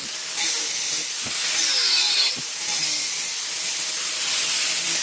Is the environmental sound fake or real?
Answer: fake